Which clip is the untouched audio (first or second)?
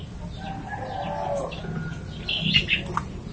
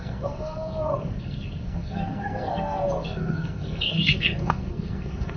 first